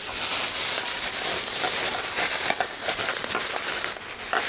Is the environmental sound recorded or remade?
recorded